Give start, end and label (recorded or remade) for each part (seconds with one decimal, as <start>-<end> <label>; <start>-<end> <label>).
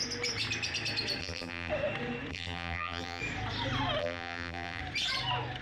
0.0-1.2 recorded; 1.2-1.7 remade; 1.7-2.3 recorded; 2.3-3.2 remade; 3.2-4.0 recorded; 4.0-4.8 remade; 4.8-5.6 recorded